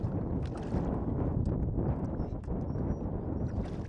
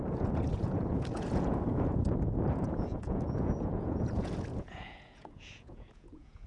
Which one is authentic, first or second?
first